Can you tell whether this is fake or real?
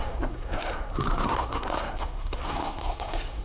fake